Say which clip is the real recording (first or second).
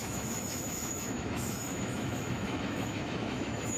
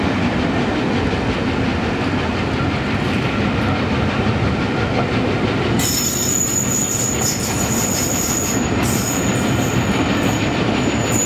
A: second